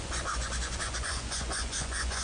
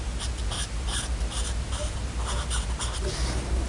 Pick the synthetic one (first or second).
first